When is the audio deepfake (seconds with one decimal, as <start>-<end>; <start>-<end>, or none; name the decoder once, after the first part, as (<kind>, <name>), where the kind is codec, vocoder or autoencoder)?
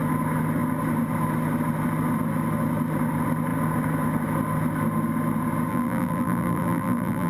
5.7-7.3 (vocoder, BigVGAN v2)